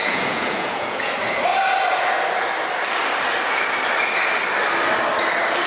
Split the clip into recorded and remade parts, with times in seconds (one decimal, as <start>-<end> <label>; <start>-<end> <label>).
0.0-1.1 remade; 1.1-5.7 recorded